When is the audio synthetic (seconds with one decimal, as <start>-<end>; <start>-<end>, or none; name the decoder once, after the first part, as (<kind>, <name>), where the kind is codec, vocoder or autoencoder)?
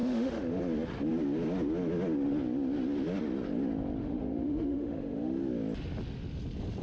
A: 0.0-0.6 (autoencoder, DAC-VAE); 4.0-5.4